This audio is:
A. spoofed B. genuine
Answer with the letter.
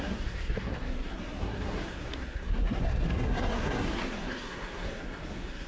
A